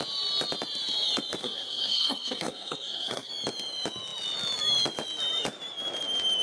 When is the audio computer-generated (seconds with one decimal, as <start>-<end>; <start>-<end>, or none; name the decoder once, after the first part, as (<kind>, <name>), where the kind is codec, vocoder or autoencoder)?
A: 1.4-3.3 (codec, SNAC)